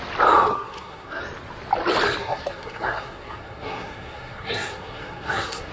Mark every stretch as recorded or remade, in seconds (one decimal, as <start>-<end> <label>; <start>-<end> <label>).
0.0-0.5 recorded; 0.5-1.2 remade; 1.2-2.2 recorded; 2.2-5.7 remade